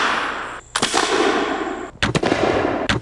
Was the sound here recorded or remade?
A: recorded